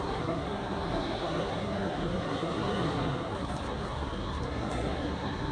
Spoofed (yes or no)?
yes